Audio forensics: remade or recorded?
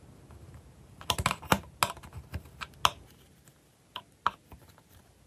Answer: recorded